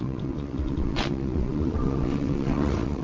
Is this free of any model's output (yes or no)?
no